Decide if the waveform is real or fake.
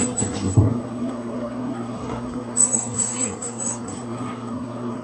fake